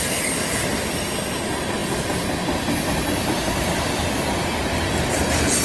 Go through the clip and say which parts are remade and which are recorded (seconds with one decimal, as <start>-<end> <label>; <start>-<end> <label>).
0.0-5.6 recorded